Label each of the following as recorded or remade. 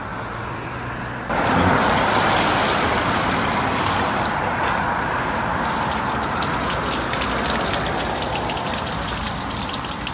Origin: recorded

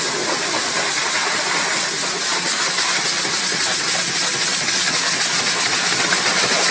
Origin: recorded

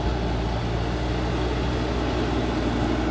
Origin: recorded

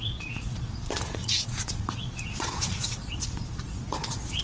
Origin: remade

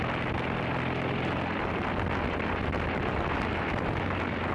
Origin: recorded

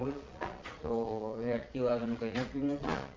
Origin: remade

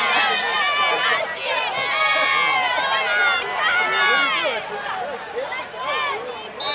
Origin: recorded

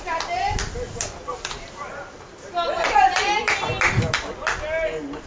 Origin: recorded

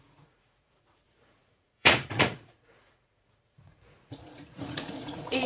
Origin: remade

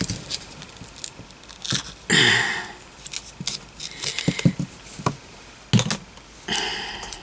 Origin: recorded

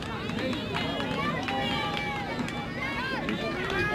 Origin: recorded